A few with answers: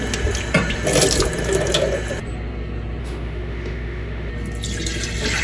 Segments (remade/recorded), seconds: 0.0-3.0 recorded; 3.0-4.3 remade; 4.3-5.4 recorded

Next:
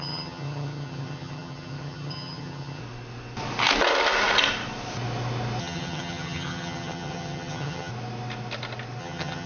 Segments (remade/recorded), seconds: 0.0-2.8 remade; 2.8-5.6 recorded; 5.6-7.9 remade; 7.9-9.0 recorded; 9.0-9.5 remade